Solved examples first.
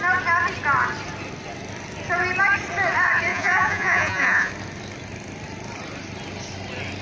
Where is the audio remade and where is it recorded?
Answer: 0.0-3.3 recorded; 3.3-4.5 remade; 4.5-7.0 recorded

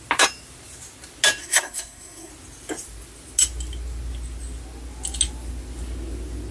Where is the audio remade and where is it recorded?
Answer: 0.0-1.4 recorded; 1.4-2.3 remade; 2.3-6.5 recorded